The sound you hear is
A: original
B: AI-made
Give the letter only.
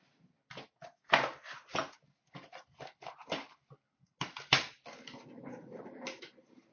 A